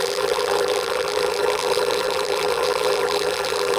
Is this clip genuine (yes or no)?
no